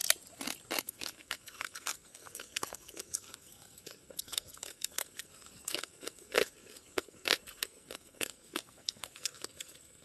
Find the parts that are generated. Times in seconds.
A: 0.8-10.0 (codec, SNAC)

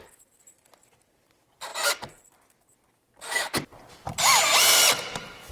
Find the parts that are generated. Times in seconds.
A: none

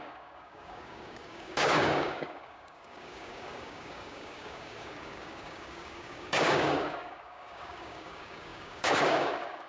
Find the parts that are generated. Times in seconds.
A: 0.0-9.7 (codec, DAC)

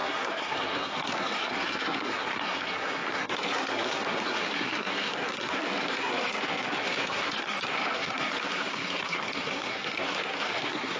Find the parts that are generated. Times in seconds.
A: 0.0-11.0 (codec, SNAC)

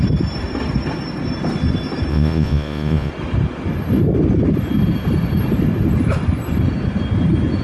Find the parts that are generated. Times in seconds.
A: 2.1-3.1 (vocoder, Vocos)

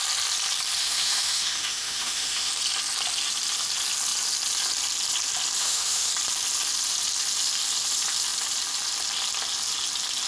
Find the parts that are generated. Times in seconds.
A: 0.8-2.5 (autoencoder, DAC-VAE); 5.6-6.1

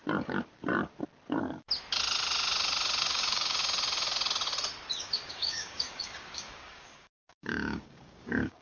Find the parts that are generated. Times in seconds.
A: 3.0-3.6 (codec, DAC); 4.9-8.6

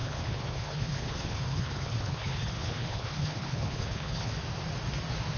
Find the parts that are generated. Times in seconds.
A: 0.0-4.3 (codec, HILCodec)